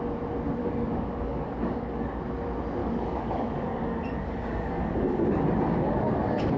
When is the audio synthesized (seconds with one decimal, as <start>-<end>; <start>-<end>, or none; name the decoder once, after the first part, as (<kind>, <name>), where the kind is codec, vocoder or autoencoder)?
0.6-2.2 (codec, DAC); 2.8-6.6